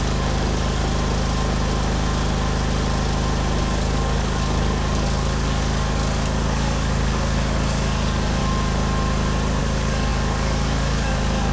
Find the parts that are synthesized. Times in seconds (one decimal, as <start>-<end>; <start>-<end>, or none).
0.0-0.8; 3.6-8.4; 9.6-11.5